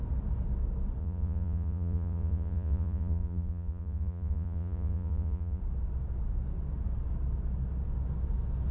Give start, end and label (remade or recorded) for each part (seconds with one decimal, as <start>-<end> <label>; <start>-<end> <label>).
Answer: 0.0-1.0 recorded; 1.0-5.6 remade; 5.6-8.7 recorded